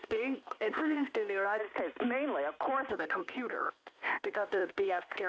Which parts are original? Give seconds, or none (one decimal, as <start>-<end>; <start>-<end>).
1.6-2.9